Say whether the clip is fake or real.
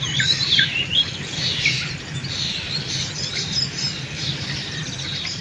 real